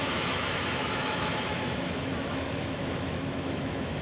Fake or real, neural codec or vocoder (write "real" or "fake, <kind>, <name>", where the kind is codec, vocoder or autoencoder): fake, autoencoder, DAC-VAE